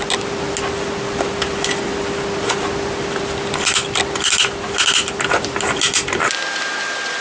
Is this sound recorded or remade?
recorded